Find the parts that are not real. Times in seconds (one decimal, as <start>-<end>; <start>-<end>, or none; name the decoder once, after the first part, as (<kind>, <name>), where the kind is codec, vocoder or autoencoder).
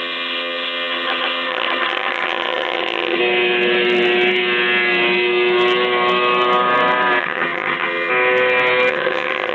0.0-3.2 (vocoder, HiFi-GAN); 7.2-8.1; 8.9-9.5